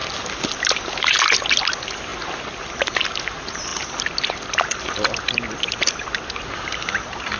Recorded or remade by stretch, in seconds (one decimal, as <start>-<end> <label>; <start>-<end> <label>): 0.0-2.1 recorded; 2.1-3.2 remade; 3.2-3.7 recorded; 3.7-7.4 remade